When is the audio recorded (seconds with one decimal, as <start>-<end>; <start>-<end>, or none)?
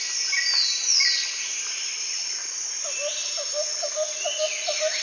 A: 0.0-5.0